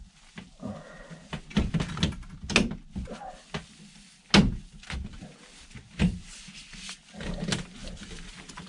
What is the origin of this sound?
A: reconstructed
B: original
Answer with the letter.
B